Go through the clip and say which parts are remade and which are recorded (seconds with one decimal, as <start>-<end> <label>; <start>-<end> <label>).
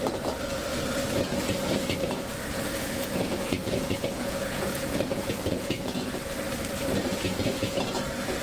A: 0.0-2.5 recorded; 2.5-6.2 remade; 6.2-7.1 recorded; 7.1-7.9 remade; 7.9-8.4 recorded